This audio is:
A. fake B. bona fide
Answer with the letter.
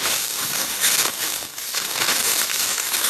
A